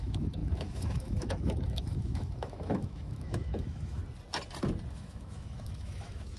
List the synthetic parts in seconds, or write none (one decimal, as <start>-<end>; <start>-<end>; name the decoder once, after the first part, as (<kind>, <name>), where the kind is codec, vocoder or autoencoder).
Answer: 0.0-4.0 (autoencoder, DAC-VAE); 4.9-6.4